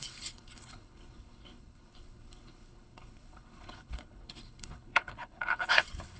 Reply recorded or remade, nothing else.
remade